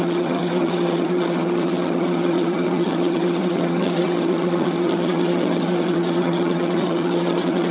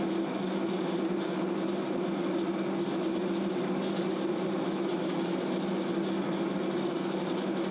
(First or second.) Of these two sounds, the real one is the second